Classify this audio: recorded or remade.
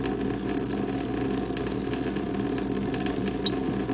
recorded